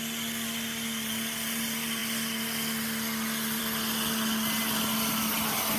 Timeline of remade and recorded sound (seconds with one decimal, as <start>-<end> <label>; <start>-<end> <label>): 0.0-5.8 recorded